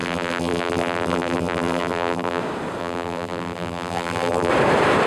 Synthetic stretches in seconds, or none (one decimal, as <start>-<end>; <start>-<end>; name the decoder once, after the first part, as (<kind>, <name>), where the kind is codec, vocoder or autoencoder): 0.0-2.4 (vocoder, BigVGAN v2); 2.8-4.5